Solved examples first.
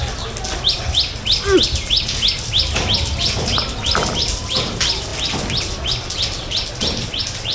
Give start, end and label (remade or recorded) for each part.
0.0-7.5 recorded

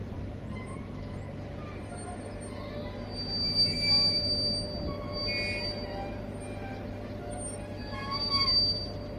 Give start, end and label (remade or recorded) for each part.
0.0-1.0 remade; 1.0-9.2 recorded